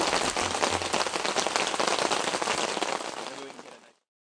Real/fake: real